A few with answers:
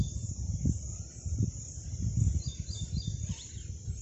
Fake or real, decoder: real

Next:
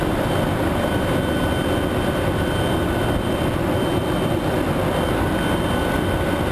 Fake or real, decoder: real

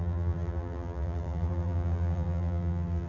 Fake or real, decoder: fake, vocoder, BigVGAN v2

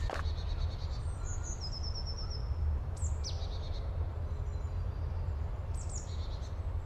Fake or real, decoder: real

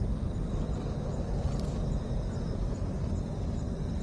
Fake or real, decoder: real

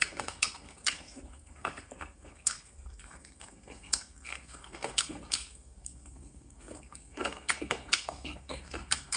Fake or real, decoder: fake, codec, SNAC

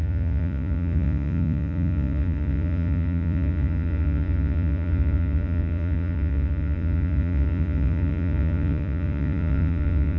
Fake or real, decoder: fake, vocoder, Vocos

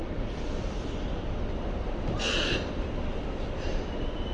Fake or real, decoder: real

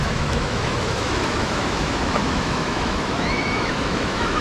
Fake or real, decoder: fake, autoencoder, DAC-VAE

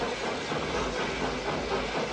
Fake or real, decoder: real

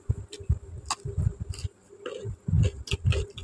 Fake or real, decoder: real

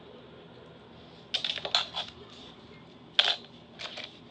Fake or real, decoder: real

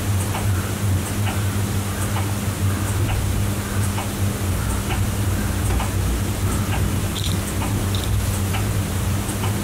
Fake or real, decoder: real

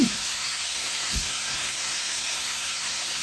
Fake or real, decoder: fake, codec, SNAC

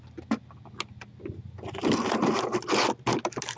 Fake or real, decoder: real